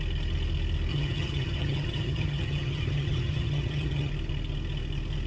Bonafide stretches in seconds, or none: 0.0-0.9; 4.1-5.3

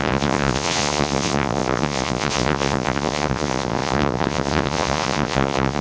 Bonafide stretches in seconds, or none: none

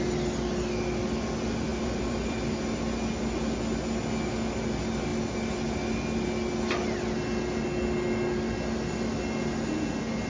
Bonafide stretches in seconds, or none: 0.0-1.7; 2.6-10.3

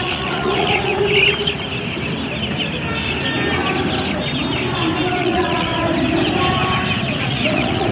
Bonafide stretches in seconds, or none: 0.9-5.2; 5.7-7.2

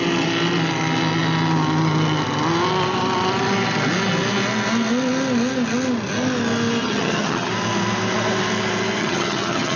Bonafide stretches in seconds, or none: 0.0-6.8; 7.5-9.0

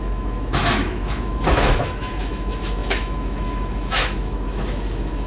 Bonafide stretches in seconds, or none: none